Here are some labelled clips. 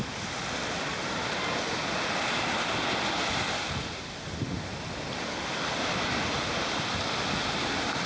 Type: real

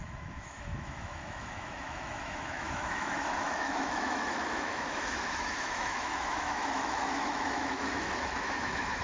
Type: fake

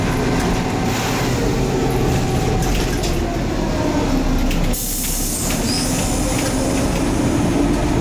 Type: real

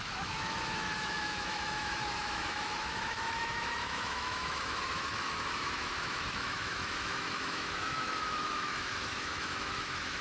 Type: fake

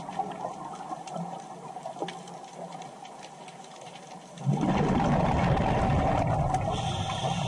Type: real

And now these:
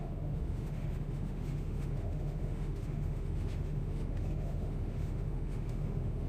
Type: fake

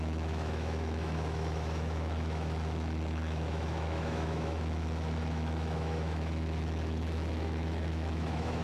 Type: fake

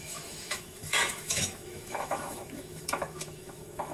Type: fake